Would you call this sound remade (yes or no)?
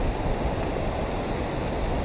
no